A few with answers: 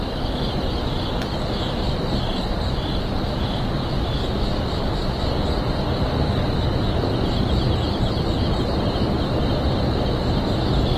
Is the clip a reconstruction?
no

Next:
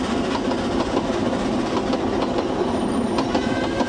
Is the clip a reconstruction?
no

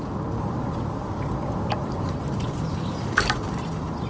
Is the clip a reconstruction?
no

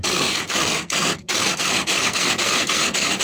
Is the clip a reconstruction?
yes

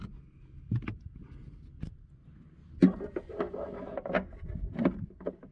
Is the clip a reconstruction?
no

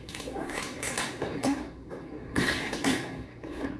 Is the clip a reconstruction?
yes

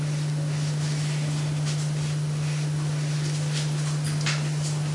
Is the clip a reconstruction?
no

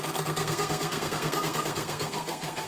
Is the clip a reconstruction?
yes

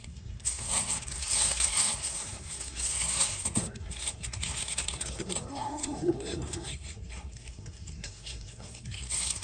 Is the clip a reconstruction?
yes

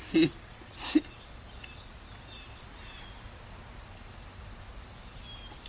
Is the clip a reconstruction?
no